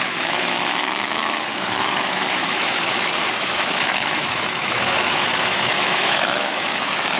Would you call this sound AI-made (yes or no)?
yes